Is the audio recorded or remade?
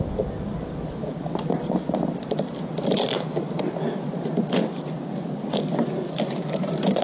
recorded